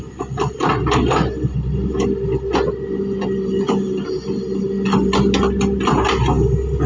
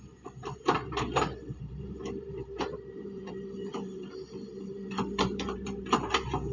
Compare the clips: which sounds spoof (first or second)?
second